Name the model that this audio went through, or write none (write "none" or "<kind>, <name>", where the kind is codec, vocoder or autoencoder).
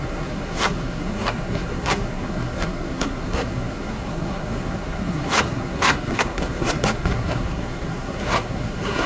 codec, SNAC